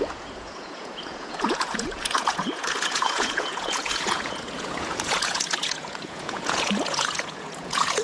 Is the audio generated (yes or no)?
yes